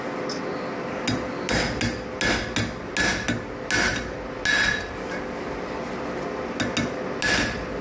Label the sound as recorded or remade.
recorded